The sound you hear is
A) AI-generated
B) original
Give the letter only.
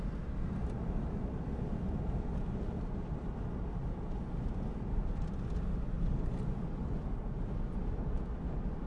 B